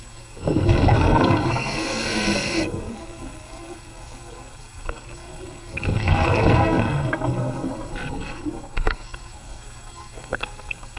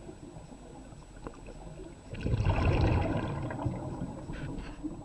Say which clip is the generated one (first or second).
first